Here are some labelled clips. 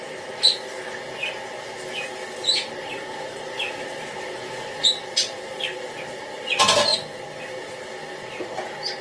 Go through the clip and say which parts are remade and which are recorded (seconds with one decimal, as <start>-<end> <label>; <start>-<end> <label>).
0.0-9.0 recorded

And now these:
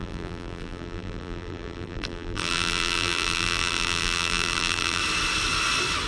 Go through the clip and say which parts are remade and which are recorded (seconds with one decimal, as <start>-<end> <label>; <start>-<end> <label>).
0.0-5.0 remade; 5.0-6.1 recorded

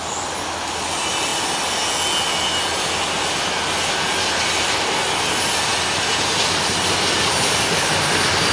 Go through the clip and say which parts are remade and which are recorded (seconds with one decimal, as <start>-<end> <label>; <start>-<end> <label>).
0.0-8.5 recorded

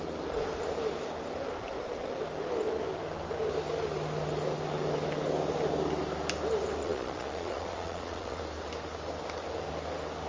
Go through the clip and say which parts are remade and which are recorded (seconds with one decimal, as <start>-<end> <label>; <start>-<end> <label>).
0.0-6.8 recorded; 6.8-8.4 remade; 8.4-10.3 recorded